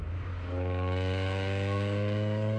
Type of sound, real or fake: fake